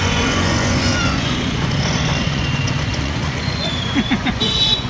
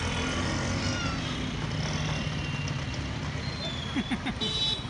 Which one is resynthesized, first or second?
first